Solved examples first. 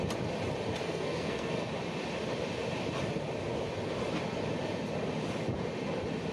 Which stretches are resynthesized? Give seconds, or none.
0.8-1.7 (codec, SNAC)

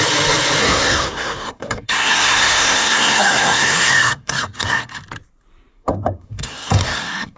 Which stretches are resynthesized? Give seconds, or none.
0.6-5.0 (codec, SNAC); 5.7-7.4

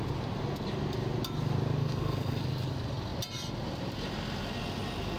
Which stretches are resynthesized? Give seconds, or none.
1.8-2.4 (codec, SNAC)